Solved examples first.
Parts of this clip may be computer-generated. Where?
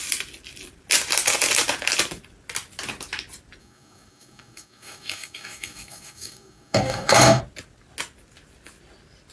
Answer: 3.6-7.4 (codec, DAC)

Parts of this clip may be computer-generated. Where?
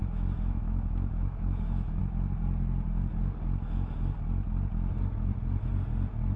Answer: 0.0-2.0 (autoencoder, DAC-VAE)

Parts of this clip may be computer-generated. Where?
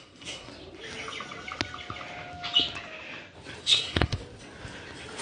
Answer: 0.0-0.5 (codec, SNAC); 3.6-4.2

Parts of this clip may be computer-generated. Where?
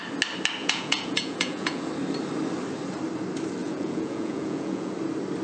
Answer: 0.6-1.9 (vocoder, Vocos); 3.6-4.9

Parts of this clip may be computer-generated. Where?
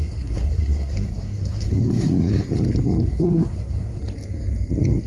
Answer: 0.0-2.3 (codec, SNAC); 3.0-4.0